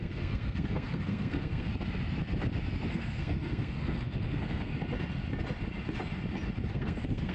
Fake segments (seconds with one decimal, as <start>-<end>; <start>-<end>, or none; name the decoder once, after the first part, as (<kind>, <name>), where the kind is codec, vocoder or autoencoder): 0.0-1.7 (codec, SNAC); 2.9-4.7; 6.7-7.3